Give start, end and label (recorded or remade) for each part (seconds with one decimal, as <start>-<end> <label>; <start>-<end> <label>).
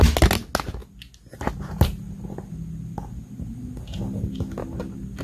0.0-5.2 recorded